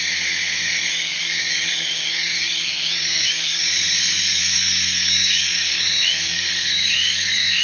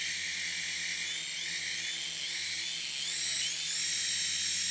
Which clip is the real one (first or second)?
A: second